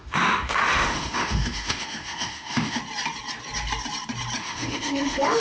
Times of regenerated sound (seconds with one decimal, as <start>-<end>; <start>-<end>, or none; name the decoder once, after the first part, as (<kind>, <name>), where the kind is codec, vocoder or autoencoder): 0.0-2.8 (autoencoder, DAC-VAE); 4.4-5.4